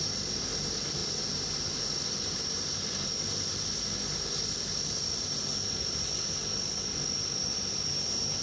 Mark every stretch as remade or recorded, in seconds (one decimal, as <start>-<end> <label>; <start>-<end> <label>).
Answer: 0.0-8.4 recorded